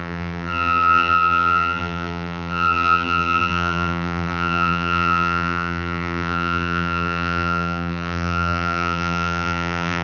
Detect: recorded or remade remade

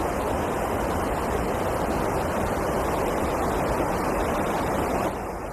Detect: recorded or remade remade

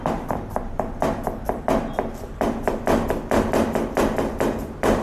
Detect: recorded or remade remade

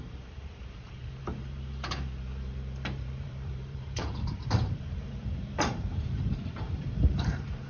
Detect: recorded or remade remade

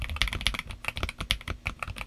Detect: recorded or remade recorded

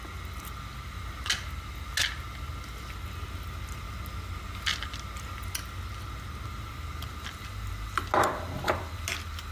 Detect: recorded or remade recorded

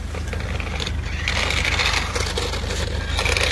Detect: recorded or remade recorded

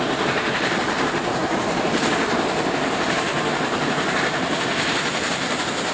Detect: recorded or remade remade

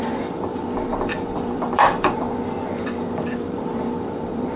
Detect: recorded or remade remade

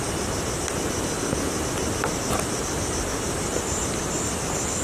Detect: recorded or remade recorded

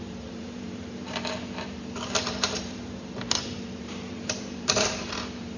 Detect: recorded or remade remade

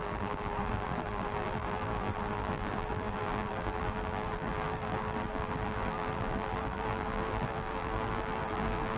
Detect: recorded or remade remade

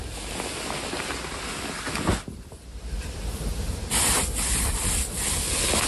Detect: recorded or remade recorded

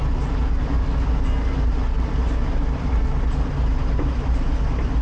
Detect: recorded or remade recorded